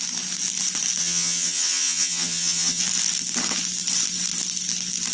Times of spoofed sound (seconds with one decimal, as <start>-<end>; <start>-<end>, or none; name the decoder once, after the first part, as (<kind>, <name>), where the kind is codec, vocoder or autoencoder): 1.0-2.8 (vocoder, HiFi-GAN)